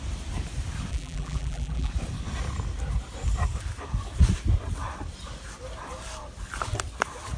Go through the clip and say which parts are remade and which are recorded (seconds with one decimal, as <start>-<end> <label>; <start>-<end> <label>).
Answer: 0.0-0.9 recorded; 0.9-1.9 remade; 1.9-7.4 recorded